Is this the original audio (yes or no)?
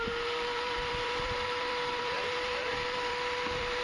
no